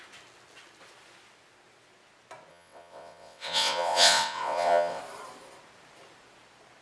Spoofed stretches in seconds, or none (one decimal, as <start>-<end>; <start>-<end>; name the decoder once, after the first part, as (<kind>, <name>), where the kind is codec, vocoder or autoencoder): 2.5-5.0 (vocoder, WaveNeXt)